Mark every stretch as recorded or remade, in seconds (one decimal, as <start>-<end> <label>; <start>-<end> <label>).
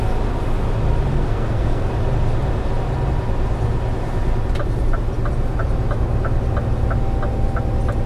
0.0-1.1 recorded; 1.1-1.9 remade; 1.9-8.1 recorded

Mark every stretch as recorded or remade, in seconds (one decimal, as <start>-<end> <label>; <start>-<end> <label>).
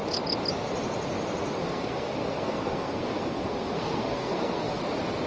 0.0-1.6 recorded; 1.6-4.8 remade; 4.8-5.3 recorded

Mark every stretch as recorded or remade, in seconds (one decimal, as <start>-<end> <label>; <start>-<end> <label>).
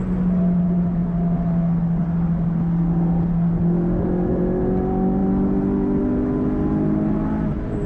0.0-7.9 recorded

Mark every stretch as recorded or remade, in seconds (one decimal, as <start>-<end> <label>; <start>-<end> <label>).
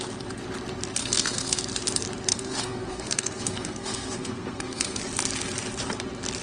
0.0-1.0 recorded; 1.0-1.6 remade; 1.6-2.3 recorded; 2.3-5.0 remade; 5.0-6.4 recorded